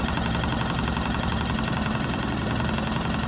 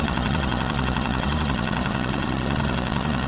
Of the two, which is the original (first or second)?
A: first